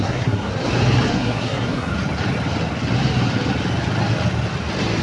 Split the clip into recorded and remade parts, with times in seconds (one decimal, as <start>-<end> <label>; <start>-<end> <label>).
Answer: 0.0-0.5 remade; 0.5-1.1 recorded; 1.1-1.9 remade; 1.9-5.0 recorded